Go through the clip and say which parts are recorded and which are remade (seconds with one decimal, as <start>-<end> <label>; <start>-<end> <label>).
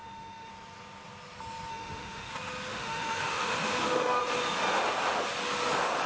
0.0-0.5 remade; 0.5-1.7 recorded; 1.7-2.3 remade; 2.3-2.7 recorded; 2.7-4.2 remade; 4.2-6.1 recorded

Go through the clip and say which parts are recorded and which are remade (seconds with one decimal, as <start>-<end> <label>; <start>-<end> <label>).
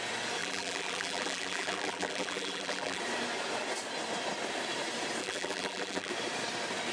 0.0-0.4 recorded; 0.4-3.0 remade; 3.0-5.2 recorded; 5.2-6.1 remade; 6.1-6.9 recorded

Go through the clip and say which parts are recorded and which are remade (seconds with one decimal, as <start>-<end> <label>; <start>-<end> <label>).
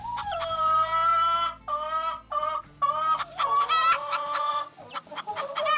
0.0-1.1 remade; 1.1-2.6 recorded; 2.6-3.8 remade; 3.8-4.9 recorded; 4.9-5.8 remade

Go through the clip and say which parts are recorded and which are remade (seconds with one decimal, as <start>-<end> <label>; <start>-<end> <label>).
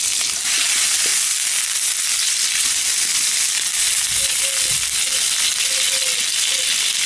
0.0-7.1 recorded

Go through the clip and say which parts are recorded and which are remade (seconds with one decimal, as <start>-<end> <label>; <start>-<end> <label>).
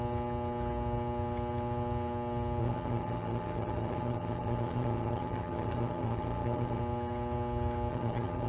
0.0-2.6 recorded; 2.6-6.8 remade; 6.8-7.9 recorded; 7.9-8.5 remade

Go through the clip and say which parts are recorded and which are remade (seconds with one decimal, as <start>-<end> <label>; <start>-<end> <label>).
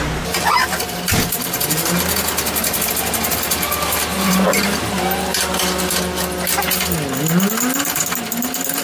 0.0-0.6 recorded; 0.6-2.9 remade; 2.9-4.1 recorded; 4.1-4.8 remade; 4.8-8.8 recorded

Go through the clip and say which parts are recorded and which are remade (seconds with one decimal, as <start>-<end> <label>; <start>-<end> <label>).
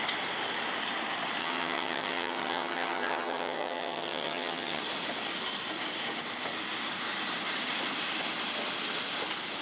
0.0-1.4 recorded; 1.4-4.8 remade; 4.8-9.6 recorded